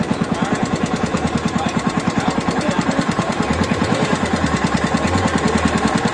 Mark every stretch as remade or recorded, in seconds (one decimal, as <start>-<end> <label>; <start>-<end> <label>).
0.0-1.1 recorded; 1.1-4.8 remade; 4.8-6.1 recorded